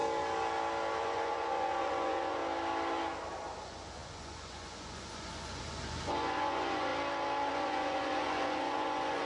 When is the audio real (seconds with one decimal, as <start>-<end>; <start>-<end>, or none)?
0.0-1.0; 2.4-3.6; 6.9-7.5